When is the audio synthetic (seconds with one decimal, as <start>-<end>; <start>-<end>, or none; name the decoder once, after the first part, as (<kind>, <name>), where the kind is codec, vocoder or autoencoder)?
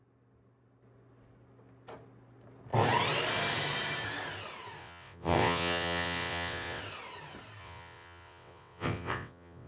4.8-6.8 (vocoder, WaveNeXt); 7.6-9.7